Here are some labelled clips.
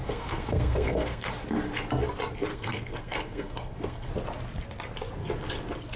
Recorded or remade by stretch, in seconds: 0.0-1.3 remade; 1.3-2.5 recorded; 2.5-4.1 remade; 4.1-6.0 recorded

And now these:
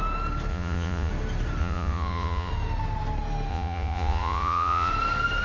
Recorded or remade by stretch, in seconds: 0.0-0.5 recorded; 0.5-1.1 remade; 1.1-1.6 recorded; 1.6-2.5 remade; 2.5-3.5 recorded; 3.5-4.9 remade; 4.9-5.4 recorded

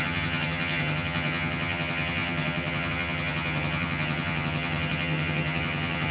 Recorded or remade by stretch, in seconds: 0.0-6.1 remade

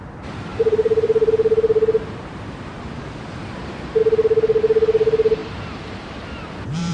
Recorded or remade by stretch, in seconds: 0.0-4.0 remade; 4.0-4.6 recorded; 4.6-6.9 remade

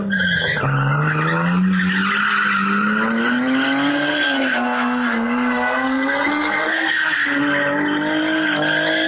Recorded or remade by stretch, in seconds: 0.0-3.9 recorded; 3.9-7.4 remade; 7.4-9.1 recorded

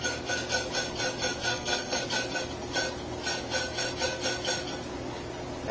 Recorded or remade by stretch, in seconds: 0.0-1.5 recorded; 1.5-2.0 remade; 2.0-5.7 recorded

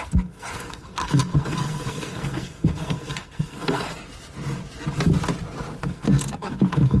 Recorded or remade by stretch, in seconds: 0.0-3.9 remade; 3.9-5.8 recorded; 5.8-7.0 remade